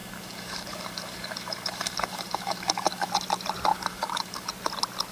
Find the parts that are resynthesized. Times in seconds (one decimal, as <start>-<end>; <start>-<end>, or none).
0.0-3.1; 3.7-4.5